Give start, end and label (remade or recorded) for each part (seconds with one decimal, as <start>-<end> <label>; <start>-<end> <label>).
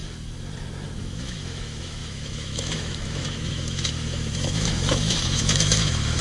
0.0-1.0 recorded; 1.0-6.2 remade